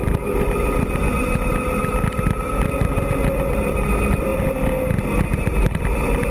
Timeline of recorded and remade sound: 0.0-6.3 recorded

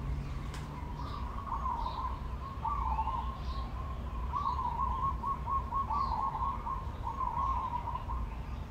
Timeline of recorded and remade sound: 0.0-8.7 remade

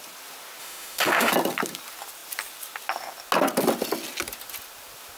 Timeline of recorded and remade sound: 0.0-0.6 recorded; 0.6-1.3 remade; 1.3-5.2 recorded

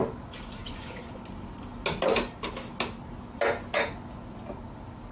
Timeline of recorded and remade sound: 0.0-0.6 recorded; 0.6-1.2 remade; 1.2-5.1 recorded

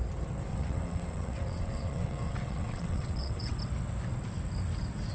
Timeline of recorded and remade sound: 0.0-0.5 recorded; 0.5-3.6 remade; 3.6-5.1 recorded